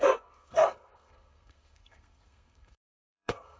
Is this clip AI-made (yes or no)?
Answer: yes